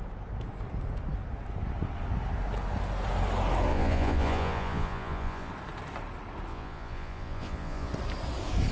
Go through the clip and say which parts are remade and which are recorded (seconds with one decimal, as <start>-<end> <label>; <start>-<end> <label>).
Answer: 0.0-3.7 recorded; 3.7-5.5 remade; 5.5-6.5 recorded; 6.5-7.9 remade; 7.9-8.7 recorded